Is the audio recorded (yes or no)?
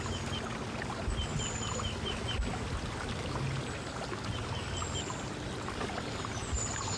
yes